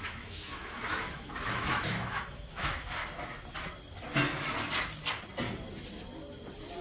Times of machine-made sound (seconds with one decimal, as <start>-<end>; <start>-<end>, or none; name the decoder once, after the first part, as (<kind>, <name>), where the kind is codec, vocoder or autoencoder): 0.0-3.0 (autoencoder, DAC-VAE)